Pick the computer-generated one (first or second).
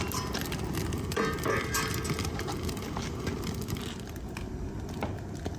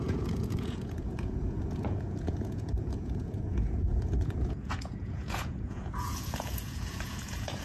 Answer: second